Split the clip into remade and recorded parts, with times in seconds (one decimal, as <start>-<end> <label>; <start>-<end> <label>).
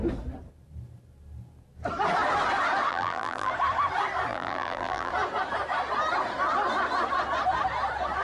0.0-2.9 recorded; 2.9-3.5 remade; 3.5-4.3 recorded; 4.3-5.1 remade; 5.1-8.2 recorded